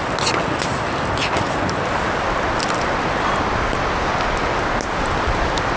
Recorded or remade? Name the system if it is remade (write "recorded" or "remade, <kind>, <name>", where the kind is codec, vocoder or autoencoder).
recorded